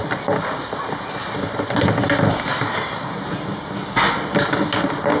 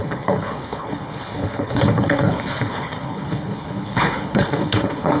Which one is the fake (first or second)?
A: second